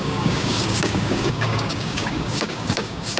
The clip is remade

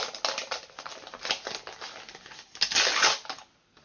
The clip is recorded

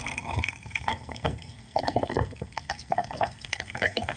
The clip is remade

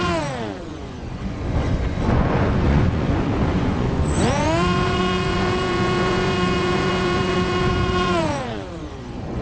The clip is remade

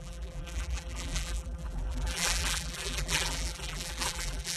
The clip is remade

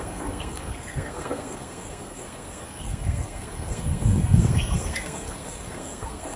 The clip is remade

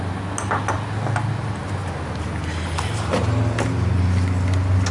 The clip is recorded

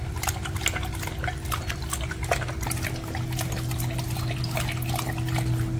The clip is recorded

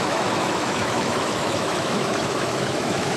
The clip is remade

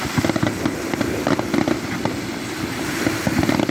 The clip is recorded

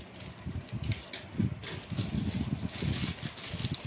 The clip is recorded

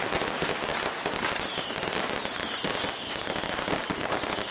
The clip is recorded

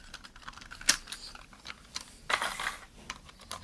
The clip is recorded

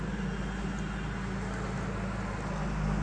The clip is recorded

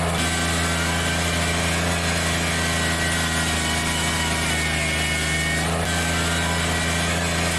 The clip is recorded